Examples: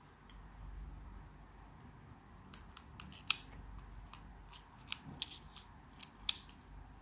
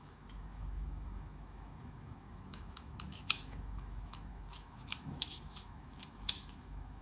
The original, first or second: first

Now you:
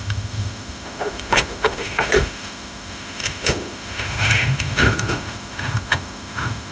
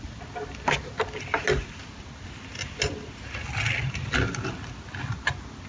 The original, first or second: second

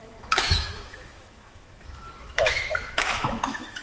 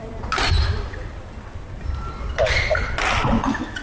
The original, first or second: second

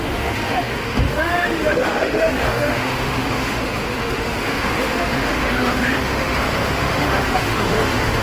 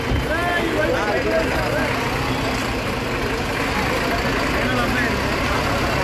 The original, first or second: second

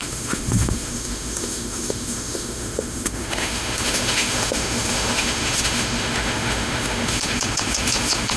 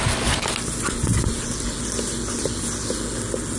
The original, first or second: second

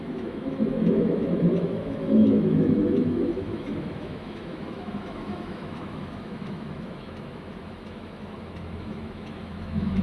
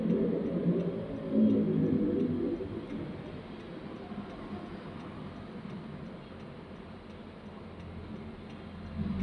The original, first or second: second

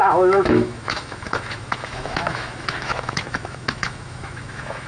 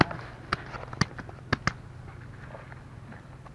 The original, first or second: second